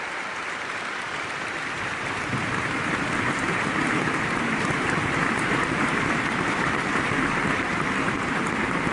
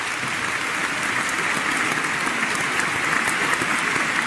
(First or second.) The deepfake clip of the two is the first